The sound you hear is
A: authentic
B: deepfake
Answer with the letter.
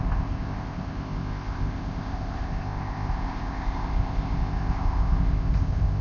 B